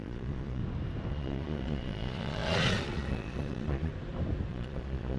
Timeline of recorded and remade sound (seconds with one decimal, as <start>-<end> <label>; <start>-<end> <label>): 0.0-0.6 remade; 0.6-1.1 recorded; 1.1-3.9 remade; 3.9-4.5 recorded; 4.5-5.2 remade